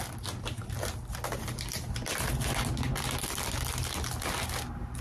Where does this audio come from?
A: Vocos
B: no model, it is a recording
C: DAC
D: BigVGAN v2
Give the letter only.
B